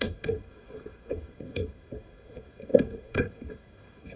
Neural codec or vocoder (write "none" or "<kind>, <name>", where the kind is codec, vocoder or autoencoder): codec, SNAC